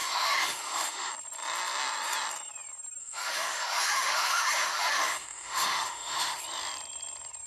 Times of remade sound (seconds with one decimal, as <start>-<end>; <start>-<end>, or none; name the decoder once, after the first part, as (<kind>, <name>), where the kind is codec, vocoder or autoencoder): 0.0-1.1 (autoencoder, DAC-VAE); 3.0-6.4